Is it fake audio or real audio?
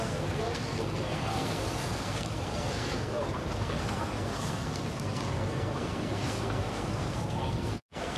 fake